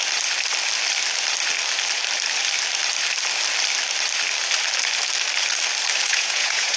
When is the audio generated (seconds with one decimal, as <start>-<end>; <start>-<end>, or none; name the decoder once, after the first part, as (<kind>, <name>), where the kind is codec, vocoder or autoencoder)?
6.1-6.8 (vocoder, Vocos)

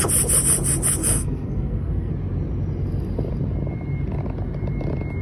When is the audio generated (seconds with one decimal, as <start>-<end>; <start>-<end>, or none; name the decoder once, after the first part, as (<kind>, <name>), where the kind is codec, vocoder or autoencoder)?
1.0-2.1 (codec, SNAC)

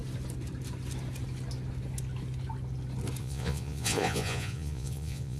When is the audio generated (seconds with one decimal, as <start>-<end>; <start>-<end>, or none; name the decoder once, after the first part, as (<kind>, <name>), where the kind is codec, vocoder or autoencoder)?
3.2-5.4 (vocoder, Vocos)

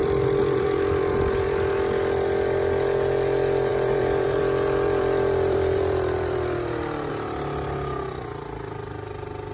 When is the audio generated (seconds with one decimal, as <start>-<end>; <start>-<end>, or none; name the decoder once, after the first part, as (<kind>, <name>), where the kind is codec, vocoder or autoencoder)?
0.0-1.7 (vocoder, BigVGAN v2); 3.7-7.1

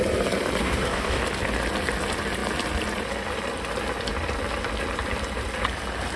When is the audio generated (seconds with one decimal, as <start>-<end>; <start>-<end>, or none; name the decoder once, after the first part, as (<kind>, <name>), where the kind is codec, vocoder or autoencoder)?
0.6-1.2 (codec, DAC)

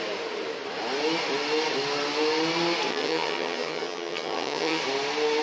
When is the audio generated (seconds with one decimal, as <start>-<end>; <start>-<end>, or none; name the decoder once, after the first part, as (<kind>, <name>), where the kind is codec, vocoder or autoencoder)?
2.9-4.8 (vocoder, HiFi-GAN)

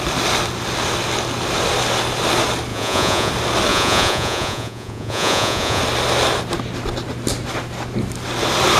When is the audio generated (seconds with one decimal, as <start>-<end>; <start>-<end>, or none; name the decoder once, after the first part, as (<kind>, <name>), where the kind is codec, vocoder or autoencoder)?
2.7-3.3 (vocoder, Vocos); 3.7-5.8